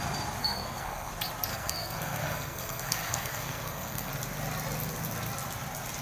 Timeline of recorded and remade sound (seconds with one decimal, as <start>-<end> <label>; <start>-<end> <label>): 0.0-0.4 recorded; 0.4-1.1 remade; 1.1-1.5 recorded; 1.5-4.1 remade; 4.1-6.0 recorded